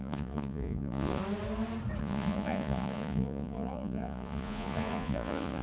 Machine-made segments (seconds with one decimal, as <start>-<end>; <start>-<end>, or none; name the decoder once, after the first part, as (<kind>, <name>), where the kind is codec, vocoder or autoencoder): 0.0-1.2 (vocoder, Vocos); 2.0-5.6